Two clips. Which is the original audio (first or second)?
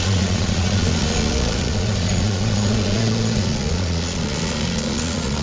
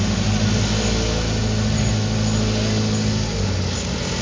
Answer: second